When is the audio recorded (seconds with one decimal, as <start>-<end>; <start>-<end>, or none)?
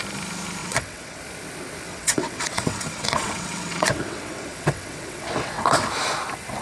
0.0-0.6; 1.2-1.9; 5.9-6.6